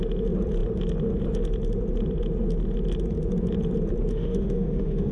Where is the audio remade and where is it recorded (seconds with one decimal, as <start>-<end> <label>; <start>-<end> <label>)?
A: 0.0-4.1 recorded; 4.1-5.1 remade

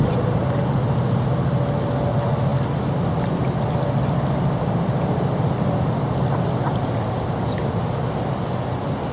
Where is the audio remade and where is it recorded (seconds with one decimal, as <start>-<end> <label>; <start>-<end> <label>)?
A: 0.0-9.1 recorded

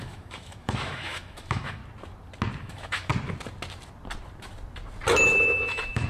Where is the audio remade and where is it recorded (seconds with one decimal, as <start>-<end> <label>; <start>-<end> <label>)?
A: 0.0-1.8 remade; 1.8-2.6 recorded; 2.6-3.1 remade; 3.1-5.1 recorded; 5.1-6.1 remade

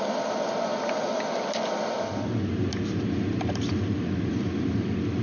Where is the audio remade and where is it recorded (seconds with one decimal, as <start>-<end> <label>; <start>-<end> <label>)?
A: 0.0-5.2 recorded